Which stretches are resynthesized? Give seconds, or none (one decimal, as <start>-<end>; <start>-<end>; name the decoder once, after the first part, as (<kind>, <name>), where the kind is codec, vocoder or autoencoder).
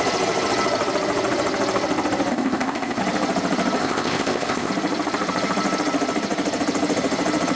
2.3-3.0 (codec, ZipCodec); 3.8-4.7